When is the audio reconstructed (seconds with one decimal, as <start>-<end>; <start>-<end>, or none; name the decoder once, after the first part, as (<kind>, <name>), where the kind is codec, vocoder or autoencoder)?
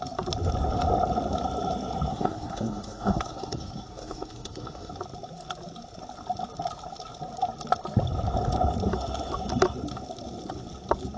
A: 2.1-4.9 (codec, SNAC)